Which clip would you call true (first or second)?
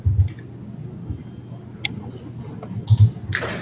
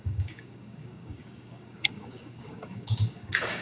first